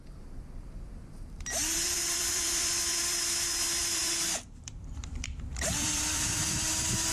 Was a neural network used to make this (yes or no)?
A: yes